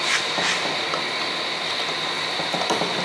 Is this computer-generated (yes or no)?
no